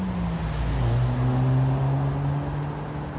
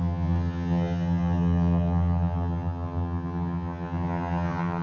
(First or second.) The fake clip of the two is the second